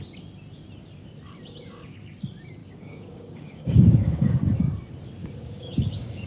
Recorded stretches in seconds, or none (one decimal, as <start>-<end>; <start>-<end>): 0.0-2.6; 4.7-5.2